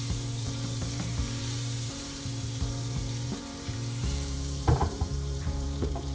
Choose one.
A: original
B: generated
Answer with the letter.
B